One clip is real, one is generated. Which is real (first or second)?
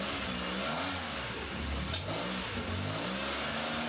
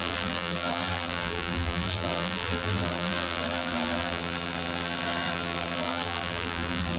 first